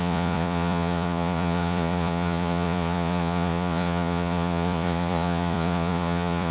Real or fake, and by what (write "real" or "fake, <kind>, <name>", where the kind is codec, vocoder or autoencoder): fake, vocoder, Vocos